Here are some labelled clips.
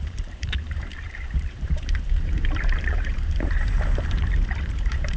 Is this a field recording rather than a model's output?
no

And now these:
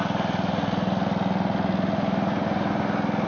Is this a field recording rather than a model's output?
yes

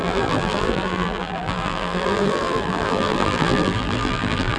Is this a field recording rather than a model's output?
no